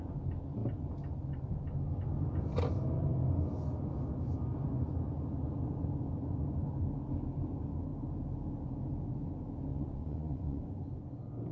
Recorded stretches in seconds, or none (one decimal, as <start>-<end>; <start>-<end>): 0.0-9.7; 10.6-11.5